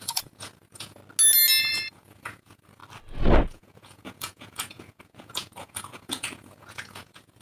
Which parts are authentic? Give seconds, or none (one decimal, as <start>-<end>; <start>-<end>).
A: 1.0-1.6; 2.8-3.5